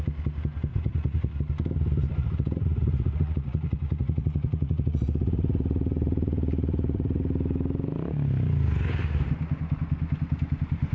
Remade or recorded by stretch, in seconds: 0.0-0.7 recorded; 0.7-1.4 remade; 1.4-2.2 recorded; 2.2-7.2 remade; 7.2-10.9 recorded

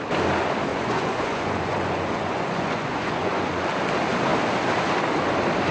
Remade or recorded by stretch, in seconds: 0.0-0.7 recorded; 0.7-3.7 remade; 3.7-5.7 recorded

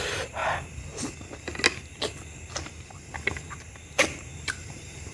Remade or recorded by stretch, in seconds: 0.0-0.4 remade; 0.4-3.5 recorded; 3.5-5.1 remade

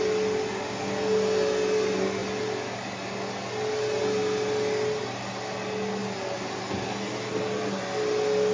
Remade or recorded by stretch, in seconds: 0.0-8.5 recorded

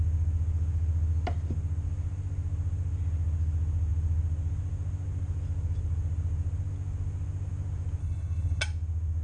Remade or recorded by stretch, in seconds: 0.0-8.0 recorded; 8.0-8.6 remade; 8.6-9.2 recorded

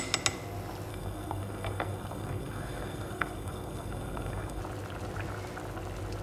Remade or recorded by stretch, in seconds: 0.0-0.9 recorded; 0.9-4.6 remade; 4.6-6.2 recorded

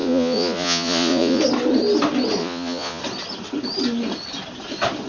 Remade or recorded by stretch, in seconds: 0.0-1.4 remade; 1.4-2.4 recorded; 2.4-3.0 remade; 3.0-5.1 recorded

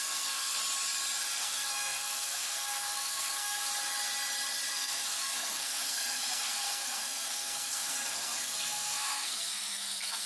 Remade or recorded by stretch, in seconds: 0.0-0.6 remade; 0.6-1.4 recorded; 1.4-3.7 remade; 3.7-4.7 recorded; 4.7-10.3 remade